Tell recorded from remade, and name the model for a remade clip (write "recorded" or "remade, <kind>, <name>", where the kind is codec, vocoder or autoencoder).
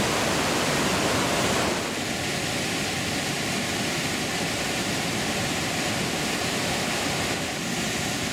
recorded